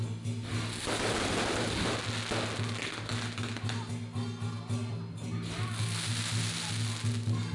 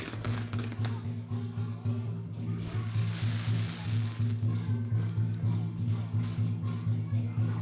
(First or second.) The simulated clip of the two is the second